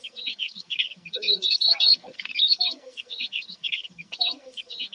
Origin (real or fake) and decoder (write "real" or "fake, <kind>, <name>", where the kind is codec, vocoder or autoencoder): fake, codec, SNAC